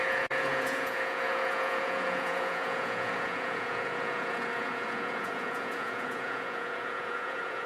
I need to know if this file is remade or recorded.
remade